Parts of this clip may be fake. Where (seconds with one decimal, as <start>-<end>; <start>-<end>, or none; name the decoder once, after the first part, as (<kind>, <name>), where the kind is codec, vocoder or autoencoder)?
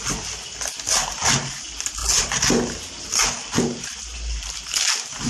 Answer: none